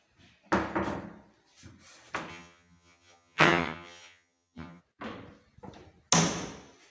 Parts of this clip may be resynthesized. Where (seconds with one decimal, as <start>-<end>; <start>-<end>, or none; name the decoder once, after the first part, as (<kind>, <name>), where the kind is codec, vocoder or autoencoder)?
2.3-4.8 (vocoder, HiFi-GAN)